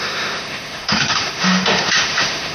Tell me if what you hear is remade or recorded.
remade